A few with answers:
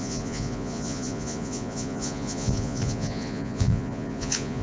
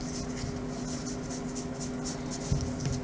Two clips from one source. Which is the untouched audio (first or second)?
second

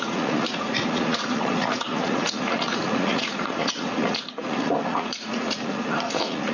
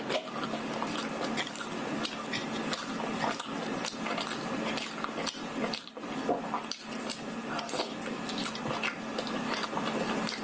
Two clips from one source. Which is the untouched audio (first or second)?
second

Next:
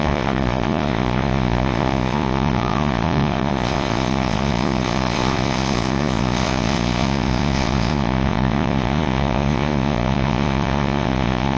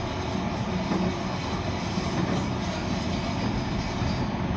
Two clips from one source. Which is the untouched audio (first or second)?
second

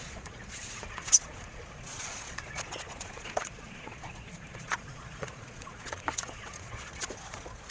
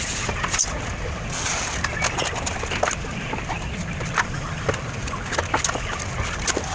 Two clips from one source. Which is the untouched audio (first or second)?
second